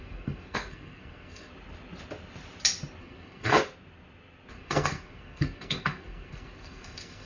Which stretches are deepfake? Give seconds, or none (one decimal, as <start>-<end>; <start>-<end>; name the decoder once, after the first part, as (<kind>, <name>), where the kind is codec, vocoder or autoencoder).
0.0-1.5 (codec, SNAC); 3.0-3.6; 4.5-7.3